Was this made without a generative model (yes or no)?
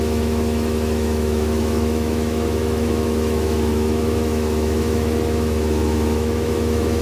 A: no